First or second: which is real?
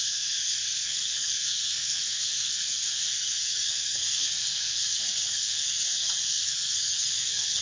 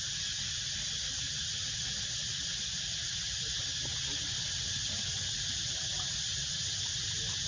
second